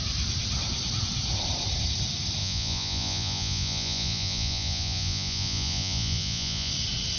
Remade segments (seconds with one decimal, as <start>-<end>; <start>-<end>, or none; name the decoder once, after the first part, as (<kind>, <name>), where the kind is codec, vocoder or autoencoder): 2.4-6.7 (vocoder, Vocos)